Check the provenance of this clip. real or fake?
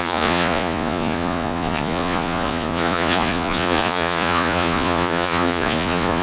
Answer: fake